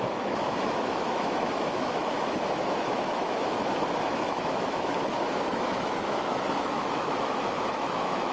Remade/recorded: remade